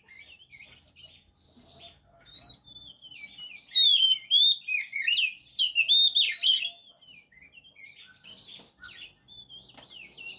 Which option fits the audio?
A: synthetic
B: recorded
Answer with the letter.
B